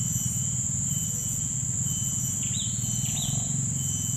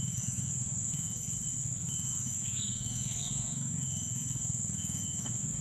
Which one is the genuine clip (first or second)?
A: first